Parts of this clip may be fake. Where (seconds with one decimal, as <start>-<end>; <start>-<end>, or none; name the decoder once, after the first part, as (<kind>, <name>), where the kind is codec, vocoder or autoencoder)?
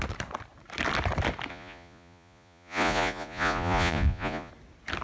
1.5-4.5 (vocoder, Vocos)